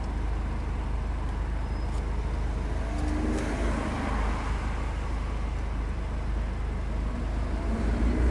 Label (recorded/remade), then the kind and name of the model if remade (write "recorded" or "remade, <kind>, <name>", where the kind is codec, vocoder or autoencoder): recorded